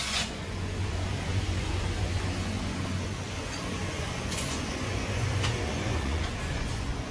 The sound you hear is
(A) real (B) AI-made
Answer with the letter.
B